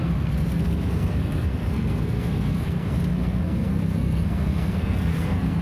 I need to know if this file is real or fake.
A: fake